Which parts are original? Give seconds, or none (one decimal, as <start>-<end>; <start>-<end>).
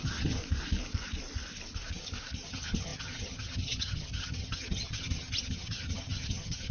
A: 0.4-2.5